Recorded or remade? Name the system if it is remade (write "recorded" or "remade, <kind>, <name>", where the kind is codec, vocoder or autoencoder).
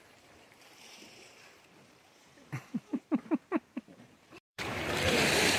remade, vocoder, BigVGAN v2